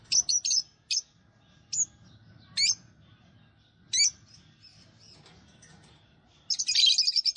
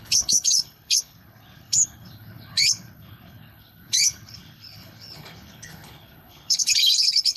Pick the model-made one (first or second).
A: second